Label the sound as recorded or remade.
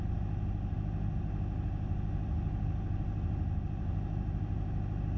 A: recorded